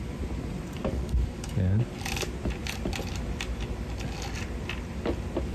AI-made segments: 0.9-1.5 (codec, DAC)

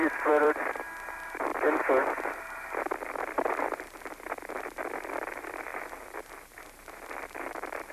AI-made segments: 0.0-1.5 (vocoder, BigVGAN v2); 4.9-5.7

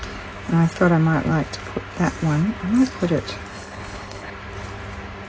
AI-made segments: 3.5-4.3 (codec, HILCodec)

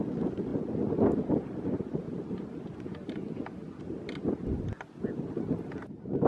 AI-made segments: none